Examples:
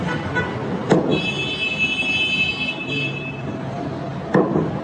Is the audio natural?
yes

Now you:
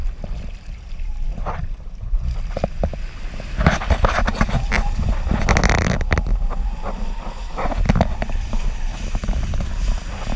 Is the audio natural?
yes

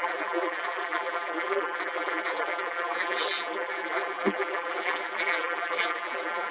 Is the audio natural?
no